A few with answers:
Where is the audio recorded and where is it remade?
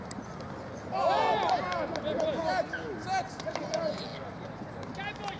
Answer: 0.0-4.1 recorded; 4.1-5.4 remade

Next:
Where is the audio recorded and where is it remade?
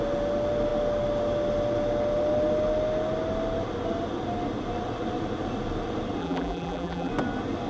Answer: 0.0-6.2 recorded; 6.2-7.1 remade; 7.1-7.7 recorded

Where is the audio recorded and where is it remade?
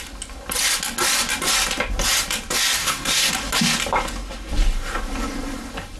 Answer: 0.0-2.8 recorded; 2.8-3.3 remade; 3.3-6.0 recorded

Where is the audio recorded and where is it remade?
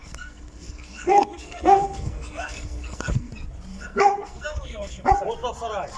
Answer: 0.0-3.3 remade; 3.3-3.7 recorded; 3.7-5.1 remade; 5.1-6.0 recorded